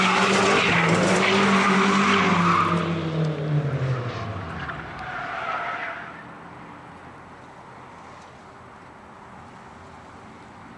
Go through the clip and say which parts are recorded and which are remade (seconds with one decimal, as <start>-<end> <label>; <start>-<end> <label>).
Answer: 0.0-10.8 recorded